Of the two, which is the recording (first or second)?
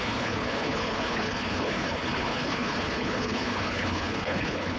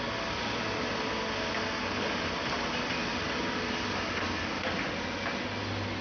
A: second